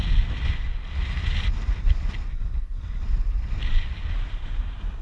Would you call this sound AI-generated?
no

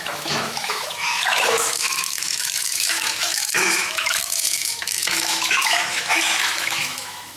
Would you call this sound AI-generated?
yes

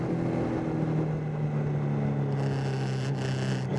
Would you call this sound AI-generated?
no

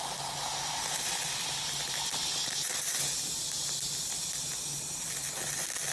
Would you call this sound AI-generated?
no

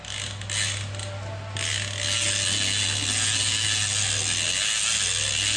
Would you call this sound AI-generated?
no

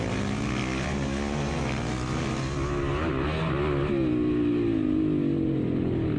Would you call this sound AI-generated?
no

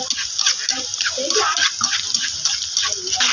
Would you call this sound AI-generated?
no